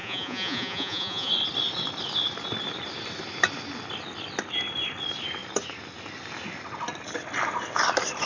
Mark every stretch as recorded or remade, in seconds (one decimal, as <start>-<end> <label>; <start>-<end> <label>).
0.0-1.3 remade; 1.3-8.3 recorded